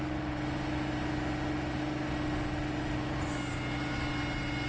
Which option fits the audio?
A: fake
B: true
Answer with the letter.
B